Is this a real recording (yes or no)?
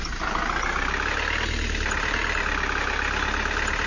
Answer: yes